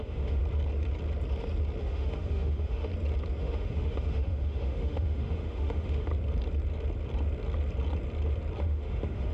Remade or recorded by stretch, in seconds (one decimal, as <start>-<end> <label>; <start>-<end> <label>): 0.0-0.4 remade; 0.4-1.8 recorded; 1.8-2.9 remade; 2.9-3.4 recorded; 3.4-6.1 remade; 6.1-8.6 recorded; 8.6-9.3 remade

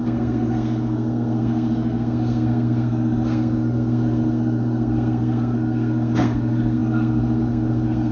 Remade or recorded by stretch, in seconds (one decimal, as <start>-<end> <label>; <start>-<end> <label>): 0.0-8.1 remade

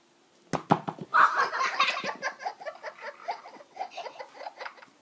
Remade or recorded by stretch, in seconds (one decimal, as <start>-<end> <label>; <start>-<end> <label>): 0.0-3.2 recorded; 3.2-4.2 remade; 4.2-5.0 recorded

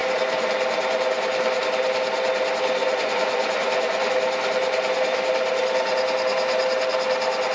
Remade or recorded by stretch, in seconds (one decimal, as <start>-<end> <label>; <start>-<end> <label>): 0.0-2.8 recorded; 2.8-4.1 remade; 4.1-7.5 recorded

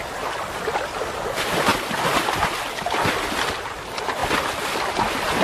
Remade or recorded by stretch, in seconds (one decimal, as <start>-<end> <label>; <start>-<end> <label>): 0.0-5.4 recorded

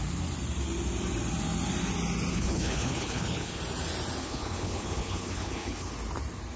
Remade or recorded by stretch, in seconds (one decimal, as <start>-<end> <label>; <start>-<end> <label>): 0.0-2.3 recorded; 2.3-3.6 remade; 3.6-4.2 recorded; 4.2-5.9 remade; 5.9-6.6 recorded

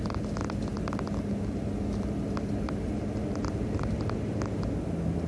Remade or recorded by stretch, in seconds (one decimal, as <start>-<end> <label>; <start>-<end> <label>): 0.0-5.3 recorded

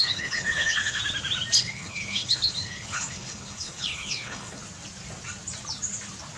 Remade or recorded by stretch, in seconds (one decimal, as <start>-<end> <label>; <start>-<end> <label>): 0.0-1.0 remade; 1.0-1.6 recorded; 1.6-4.6 remade; 4.6-6.4 recorded